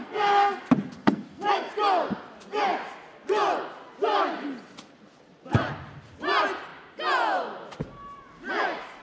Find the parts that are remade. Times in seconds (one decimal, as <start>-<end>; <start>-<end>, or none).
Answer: 0.0-0.6; 1.0-1.7